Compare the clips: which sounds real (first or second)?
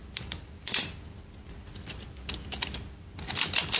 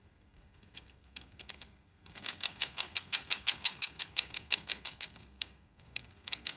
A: first